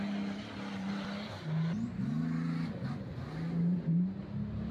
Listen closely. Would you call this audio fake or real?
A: real